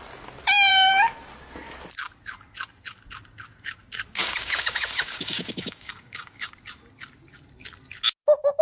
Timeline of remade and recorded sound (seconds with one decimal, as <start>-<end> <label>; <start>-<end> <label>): 0.0-4.2 recorded; 4.2-6.5 remade; 6.5-8.6 recorded